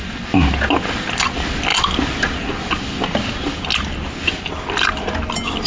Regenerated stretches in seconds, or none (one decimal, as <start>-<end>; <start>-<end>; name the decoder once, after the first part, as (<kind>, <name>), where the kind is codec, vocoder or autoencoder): none